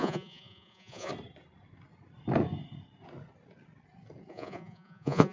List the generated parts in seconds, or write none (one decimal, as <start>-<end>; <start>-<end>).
0.0-1.1; 4.3-5.3